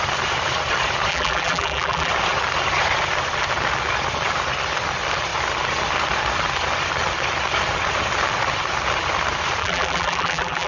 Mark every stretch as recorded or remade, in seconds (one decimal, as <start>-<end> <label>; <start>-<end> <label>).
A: 0.0-1.1 recorded; 1.1-2.1 remade; 2.1-9.6 recorded; 9.6-10.7 remade